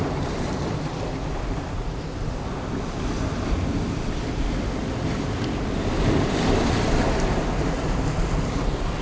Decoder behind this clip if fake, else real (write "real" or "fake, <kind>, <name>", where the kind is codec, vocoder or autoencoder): real